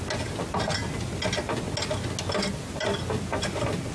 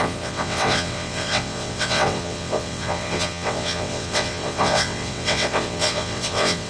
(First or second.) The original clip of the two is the first